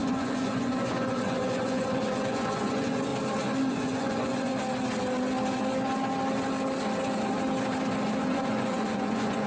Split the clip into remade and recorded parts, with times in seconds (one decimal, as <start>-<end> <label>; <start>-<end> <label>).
0.0-3.1 remade; 3.1-3.7 recorded; 3.7-4.5 remade; 4.5-8.2 recorded; 8.2-9.5 remade